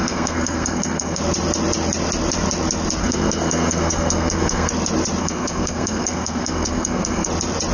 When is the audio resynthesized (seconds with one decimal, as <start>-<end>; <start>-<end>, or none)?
0.0-1.2; 3.0-4.7; 5.2-7.3

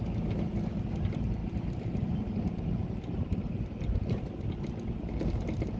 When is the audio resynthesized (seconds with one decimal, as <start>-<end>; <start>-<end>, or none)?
none